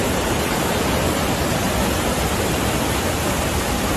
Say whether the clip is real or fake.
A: real